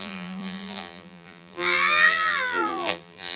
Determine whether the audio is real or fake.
fake